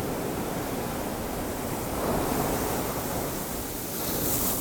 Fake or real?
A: real